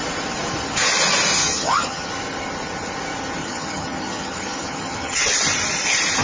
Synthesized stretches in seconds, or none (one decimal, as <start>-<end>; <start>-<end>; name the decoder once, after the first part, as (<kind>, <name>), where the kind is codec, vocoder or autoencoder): 1.4-2.1 (vocoder, HiFi-GAN); 3.4-5.2